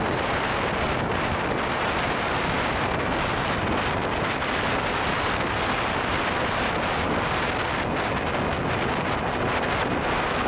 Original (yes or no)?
yes